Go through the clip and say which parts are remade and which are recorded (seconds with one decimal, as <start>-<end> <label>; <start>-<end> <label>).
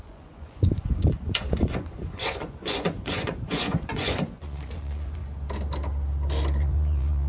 0.0-5.2 remade; 5.2-6.6 recorded; 6.6-7.3 remade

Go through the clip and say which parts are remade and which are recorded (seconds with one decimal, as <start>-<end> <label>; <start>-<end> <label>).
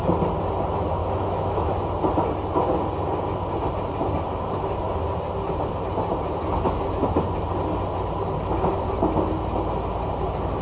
0.0-1.0 recorded; 1.0-1.7 remade; 1.7-10.6 recorded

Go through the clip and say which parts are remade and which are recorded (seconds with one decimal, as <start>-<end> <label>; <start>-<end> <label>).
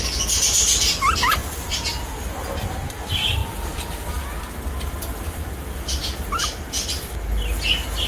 0.0-8.1 recorded